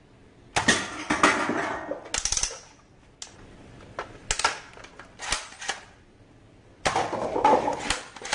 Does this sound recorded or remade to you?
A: recorded